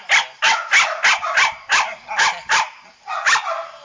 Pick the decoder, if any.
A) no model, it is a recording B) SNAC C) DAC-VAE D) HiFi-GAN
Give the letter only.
A